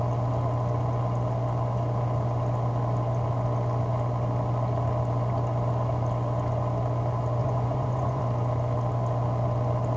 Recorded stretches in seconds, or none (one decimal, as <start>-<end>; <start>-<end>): 0.0-7.4; 8.2-10.0